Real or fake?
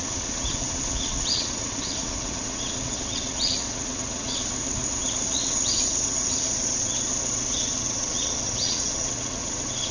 fake